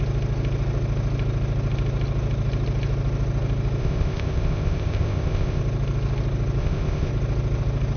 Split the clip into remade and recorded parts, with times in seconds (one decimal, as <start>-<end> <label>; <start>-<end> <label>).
0.0-3.8 recorded; 3.8-5.6 remade; 5.6-6.6 recorded; 6.6-7.1 remade; 7.1-8.0 recorded